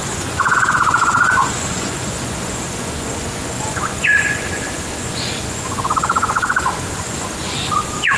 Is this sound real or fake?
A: fake